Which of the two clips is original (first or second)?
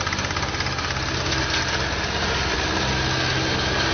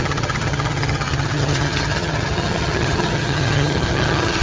first